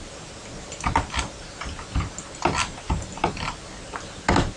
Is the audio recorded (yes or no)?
yes